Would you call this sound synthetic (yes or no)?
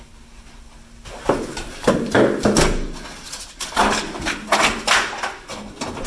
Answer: no